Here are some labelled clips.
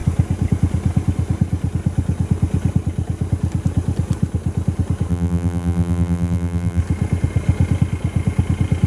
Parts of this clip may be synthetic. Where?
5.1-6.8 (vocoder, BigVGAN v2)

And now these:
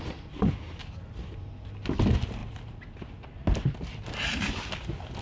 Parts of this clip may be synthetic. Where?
none

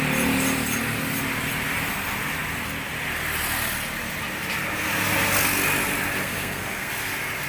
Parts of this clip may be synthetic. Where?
6.2-6.9 (codec, SNAC)

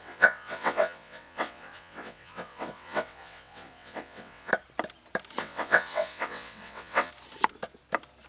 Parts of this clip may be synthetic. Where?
0.0-4.5 (vocoder, WaveNeXt); 5.4-7.1

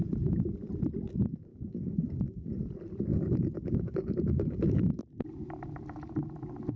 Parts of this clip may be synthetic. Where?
1.5-2.5 (codec, DAC); 3.1-5.0

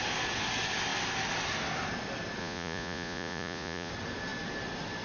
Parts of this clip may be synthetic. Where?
2.4-3.9 (vocoder, Vocos)